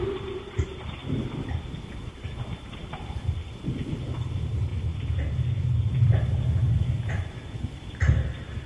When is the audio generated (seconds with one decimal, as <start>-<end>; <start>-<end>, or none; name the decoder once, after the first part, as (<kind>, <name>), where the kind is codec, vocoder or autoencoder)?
0.0-1.0 (vocoder, BigVGAN v2); 3.4-4.7; 7.0-8.7